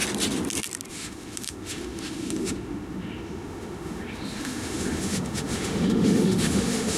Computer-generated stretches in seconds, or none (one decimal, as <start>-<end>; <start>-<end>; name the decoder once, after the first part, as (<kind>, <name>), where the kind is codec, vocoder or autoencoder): 0.9-7.0 (autoencoder, DAC-VAE)